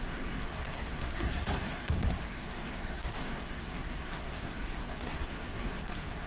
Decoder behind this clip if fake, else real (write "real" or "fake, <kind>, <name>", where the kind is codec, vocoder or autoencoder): fake, codec, SNAC